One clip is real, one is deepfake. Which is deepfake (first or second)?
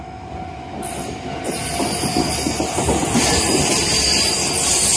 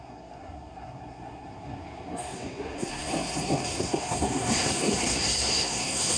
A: second